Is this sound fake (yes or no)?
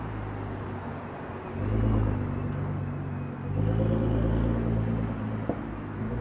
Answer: no